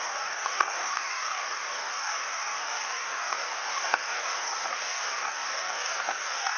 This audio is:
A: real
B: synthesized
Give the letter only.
B